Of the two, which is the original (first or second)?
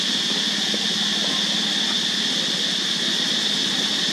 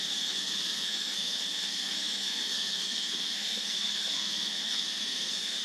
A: first